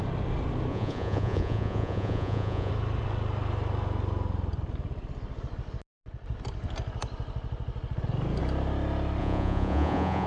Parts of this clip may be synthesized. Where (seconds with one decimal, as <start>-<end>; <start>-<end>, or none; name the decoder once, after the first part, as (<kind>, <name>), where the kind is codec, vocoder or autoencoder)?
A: 0.7-2.7 (vocoder, Vocos); 9.2-10.3